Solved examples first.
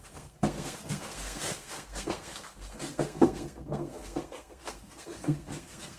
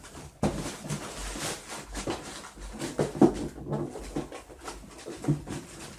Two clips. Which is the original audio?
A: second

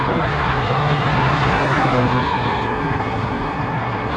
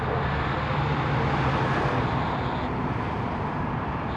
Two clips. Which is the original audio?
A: second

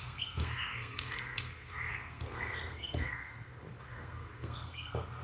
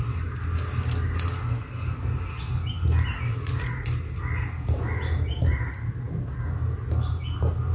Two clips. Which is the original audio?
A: second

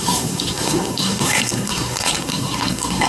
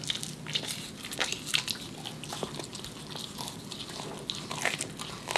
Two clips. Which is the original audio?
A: second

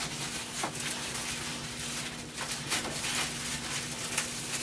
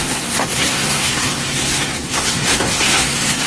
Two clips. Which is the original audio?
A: first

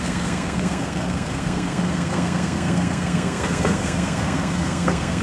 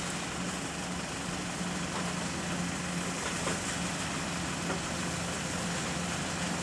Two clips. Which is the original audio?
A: second